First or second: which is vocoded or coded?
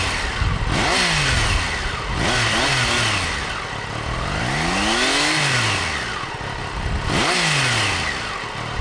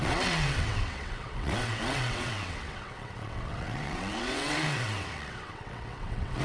second